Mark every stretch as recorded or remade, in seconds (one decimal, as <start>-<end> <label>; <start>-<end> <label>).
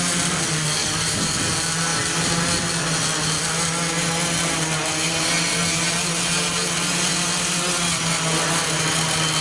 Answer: 0.0-0.8 recorded; 0.8-1.4 remade; 1.4-9.4 recorded